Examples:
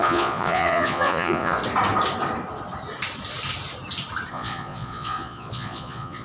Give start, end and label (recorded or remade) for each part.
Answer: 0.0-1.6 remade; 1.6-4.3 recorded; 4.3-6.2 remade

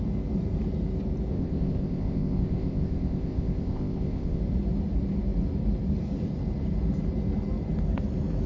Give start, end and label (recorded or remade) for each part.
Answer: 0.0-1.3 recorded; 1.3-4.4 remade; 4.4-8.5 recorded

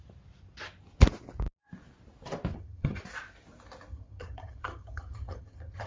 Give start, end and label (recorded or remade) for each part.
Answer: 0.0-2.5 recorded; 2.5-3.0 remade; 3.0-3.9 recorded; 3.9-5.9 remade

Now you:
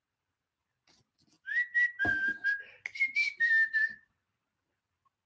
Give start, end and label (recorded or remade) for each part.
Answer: 0.0-5.3 recorded